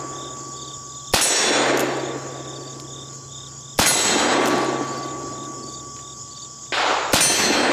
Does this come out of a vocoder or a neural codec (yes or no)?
no